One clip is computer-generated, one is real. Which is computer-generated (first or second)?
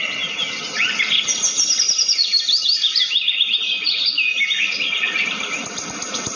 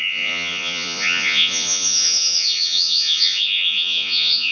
second